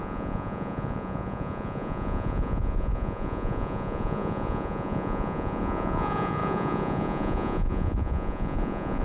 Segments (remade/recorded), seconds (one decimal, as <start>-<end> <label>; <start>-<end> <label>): 0.0-9.0 remade